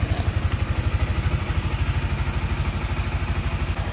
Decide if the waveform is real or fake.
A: real